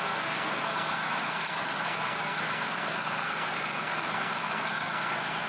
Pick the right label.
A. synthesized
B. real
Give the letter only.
A